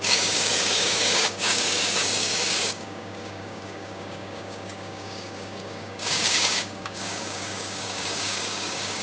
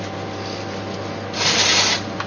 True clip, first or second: second